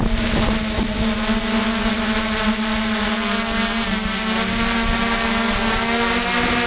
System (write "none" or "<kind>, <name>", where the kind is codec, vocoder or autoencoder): none